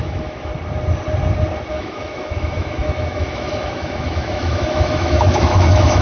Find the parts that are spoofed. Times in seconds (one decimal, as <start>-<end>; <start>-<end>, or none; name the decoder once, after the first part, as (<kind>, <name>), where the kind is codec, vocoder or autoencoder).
0.0-0.5 (autoencoder, DAC-VAE); 1.7-6.0